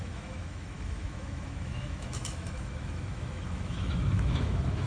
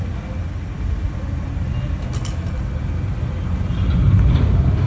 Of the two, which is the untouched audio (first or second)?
second